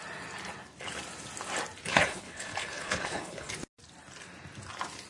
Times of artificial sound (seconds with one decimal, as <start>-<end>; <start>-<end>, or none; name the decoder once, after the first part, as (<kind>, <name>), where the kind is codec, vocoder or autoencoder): 1.9-3.5 (codec, HILCodec)